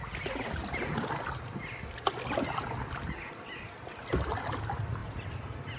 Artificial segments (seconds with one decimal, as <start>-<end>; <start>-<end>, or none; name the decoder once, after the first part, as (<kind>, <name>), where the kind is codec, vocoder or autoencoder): none

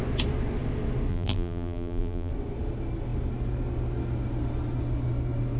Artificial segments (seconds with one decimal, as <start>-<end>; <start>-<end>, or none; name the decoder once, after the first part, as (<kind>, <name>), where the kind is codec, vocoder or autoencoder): 1.1-2.3 (vocoder, BigVGAN v2)